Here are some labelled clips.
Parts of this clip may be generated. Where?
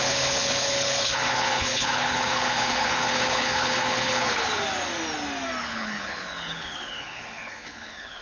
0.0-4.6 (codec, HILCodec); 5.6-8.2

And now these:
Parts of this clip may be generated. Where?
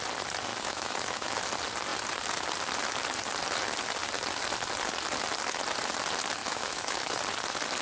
0.5-1.4 (autoencoder, DAC-VAE); 6.4-7.2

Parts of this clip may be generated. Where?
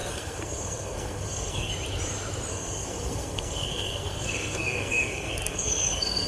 0.0-1.7 (codec, SNAC); 2.5-6.3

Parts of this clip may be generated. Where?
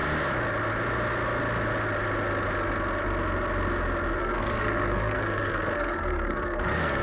4.2-7.0 (codec, SNAC)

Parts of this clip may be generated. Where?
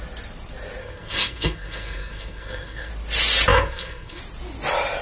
0.8-2.9 (codec, SNAC); 3.5-4.2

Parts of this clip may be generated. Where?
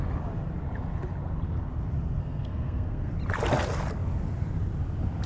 2.2-3.1 (codec, SNAC)